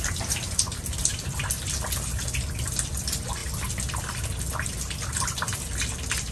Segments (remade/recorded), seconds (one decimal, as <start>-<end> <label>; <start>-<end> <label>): 0.0-1.1 recorded; 1.1-1.6 remade; 1.6-3.4 recorded; 3.4-3.9 remade; 3.9-6.3 recorded

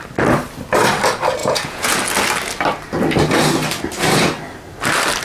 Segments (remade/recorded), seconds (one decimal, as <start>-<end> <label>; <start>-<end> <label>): 0.0-1.4 recorded; 1.4-2.0 remade; 2.0-5.2 recorded

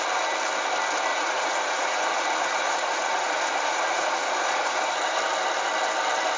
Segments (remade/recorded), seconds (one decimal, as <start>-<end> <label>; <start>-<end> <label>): 0.0-1.1 recorded; 1.1-4.9 remade; 4.9-6.4 recorded

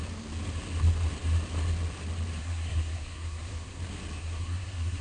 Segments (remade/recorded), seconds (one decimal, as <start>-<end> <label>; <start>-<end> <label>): 0.0-2.4 recorded; 2.4-3.8 remade; 3.8-4.2 recorded; 4.2-5.0 remade

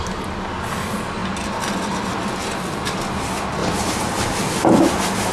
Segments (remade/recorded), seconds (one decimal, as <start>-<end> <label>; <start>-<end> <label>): 0.0-3.6 recorded; 3.6-4.4 remade; 4.4-5.3 recorded

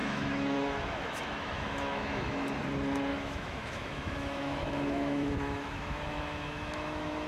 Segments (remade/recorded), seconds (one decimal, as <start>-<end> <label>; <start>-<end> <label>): 0.0-2.6 remade; 2.6-3.1 recorded; 3.1-7.3 remade

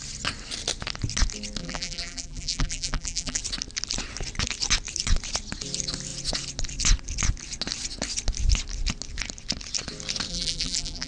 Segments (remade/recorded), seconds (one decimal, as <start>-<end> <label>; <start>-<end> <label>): 0.0-1.6 recorded; 1.6-3.4 remade; 3.4-10.3 recorded; 10.3-11.1 remade

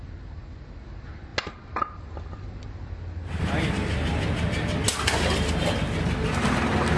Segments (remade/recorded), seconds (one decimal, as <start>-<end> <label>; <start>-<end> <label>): 0.0-7.0 recorded